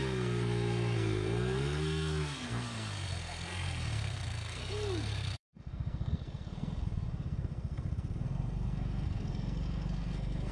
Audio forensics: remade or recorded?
remade